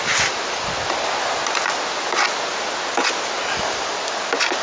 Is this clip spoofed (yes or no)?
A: no